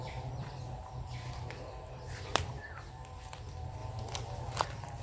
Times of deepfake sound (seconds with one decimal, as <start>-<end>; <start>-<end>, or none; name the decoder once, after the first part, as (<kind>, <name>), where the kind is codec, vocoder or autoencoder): 0.0-3.8 (vocoder, BigVGAN v2); 4.6-5.0